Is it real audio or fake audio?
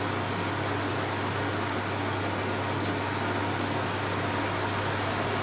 real